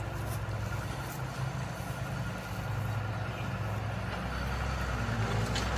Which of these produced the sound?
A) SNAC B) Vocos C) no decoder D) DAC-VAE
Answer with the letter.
C